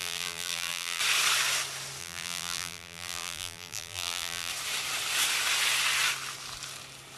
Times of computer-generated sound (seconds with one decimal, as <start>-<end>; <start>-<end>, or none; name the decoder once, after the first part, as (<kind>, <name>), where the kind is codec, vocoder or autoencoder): 0.0-1.0 (vocoder, BigVGAN v2); 2.0-4.5